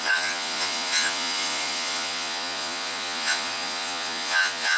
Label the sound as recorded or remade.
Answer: remade